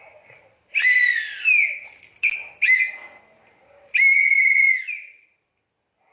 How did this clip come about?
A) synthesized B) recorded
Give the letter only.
B